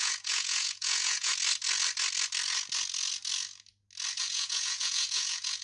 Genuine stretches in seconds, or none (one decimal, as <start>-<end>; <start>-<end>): 1.3-4.2